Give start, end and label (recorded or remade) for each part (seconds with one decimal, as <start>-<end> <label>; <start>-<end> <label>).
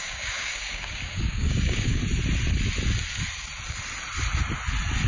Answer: 0.0-2.0 remade; 2.0-5.1 recorded